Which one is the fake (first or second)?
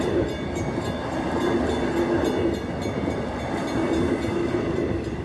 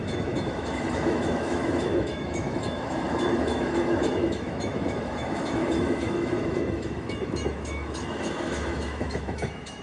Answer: second